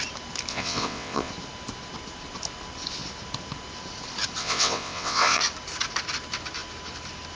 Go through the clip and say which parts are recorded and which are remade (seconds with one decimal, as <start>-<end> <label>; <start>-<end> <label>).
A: 0.0-0.5 recorded; 0.5-1.3 remade; 1.3-4.4 recorded; 4.4-5.4 remade; 5.4-7.3 recorded